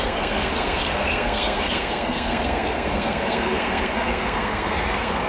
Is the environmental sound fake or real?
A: fake